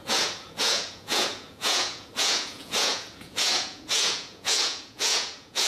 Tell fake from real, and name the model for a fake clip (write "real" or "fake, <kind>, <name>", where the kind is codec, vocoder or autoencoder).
fake, vocoder, Vocos